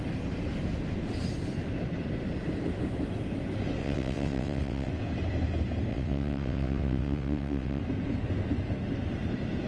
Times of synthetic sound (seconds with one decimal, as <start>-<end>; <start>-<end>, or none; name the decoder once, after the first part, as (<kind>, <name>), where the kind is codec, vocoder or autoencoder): 3.8-4.9 (vocoder, WaveNeXt); 5.9-7.8